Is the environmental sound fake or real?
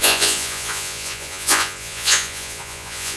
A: fake